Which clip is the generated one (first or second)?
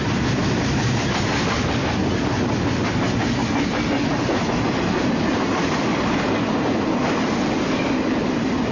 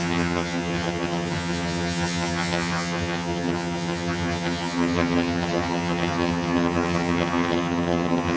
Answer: second